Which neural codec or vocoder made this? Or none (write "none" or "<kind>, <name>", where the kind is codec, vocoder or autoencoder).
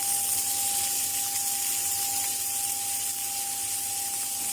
none